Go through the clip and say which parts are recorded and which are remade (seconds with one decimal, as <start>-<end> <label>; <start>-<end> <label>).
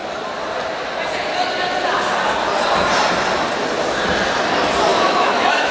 0.0-4.9 recorded; 4.9-5.7 remade